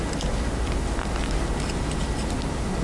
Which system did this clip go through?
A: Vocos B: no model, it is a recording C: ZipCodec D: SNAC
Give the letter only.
B